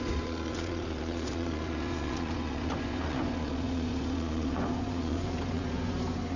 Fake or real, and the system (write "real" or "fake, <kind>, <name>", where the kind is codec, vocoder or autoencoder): fake, vocoder, Vocos